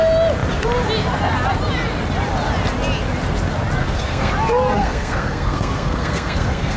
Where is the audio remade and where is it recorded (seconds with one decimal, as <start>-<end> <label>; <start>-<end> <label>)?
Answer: 0.0-3.8 recorded; 3.8-4.3 remade; 4.3-4.7 recorded; 4.7-6.8 remade